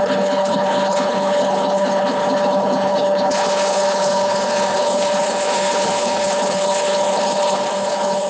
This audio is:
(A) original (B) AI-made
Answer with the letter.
B